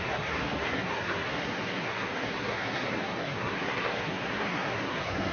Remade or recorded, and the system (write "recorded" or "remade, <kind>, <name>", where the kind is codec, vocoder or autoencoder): remade, codec, SNAC